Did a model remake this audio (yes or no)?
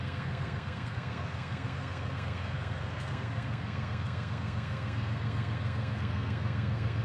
yes